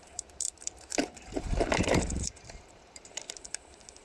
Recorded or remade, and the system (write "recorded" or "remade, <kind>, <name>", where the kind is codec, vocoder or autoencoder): remade, vocoder, BigVGAN v2